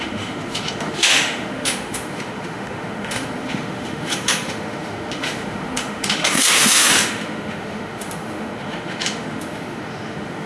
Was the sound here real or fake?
fake